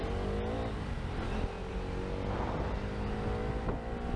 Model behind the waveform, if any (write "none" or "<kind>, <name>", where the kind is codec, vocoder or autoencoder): none